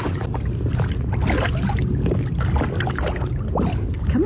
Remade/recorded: recorded